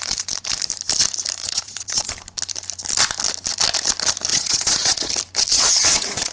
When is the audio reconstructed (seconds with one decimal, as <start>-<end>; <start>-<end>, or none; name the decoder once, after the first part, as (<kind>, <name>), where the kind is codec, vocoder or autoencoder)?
1.4-2.1 (vocoder, Vocos); 4.3-5.1; 5.5-6.3